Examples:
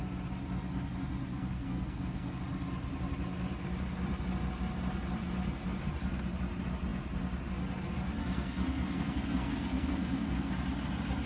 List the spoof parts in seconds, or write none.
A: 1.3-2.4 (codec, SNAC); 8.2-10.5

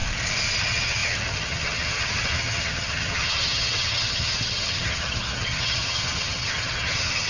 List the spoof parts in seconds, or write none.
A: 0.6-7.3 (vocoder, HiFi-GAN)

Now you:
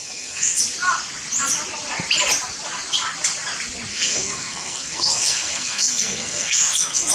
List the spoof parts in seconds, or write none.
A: 0.0-0.6 (codec, SNAC); 3.9-7.1